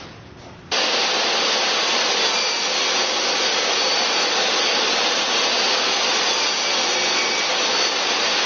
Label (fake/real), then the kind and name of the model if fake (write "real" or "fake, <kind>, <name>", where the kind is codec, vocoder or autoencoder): real